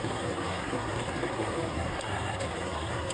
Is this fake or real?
fake